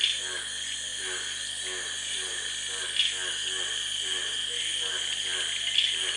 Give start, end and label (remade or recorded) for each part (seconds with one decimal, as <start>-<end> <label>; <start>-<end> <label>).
0.0-6.2 recorded